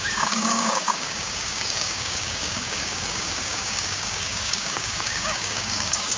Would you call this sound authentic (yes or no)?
no